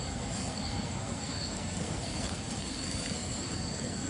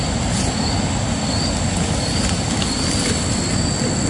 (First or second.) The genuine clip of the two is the second